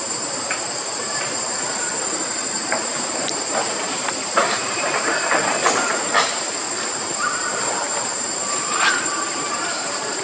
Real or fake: fake